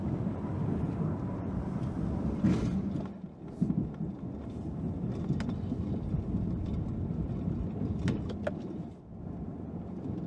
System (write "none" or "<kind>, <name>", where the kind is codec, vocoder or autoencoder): none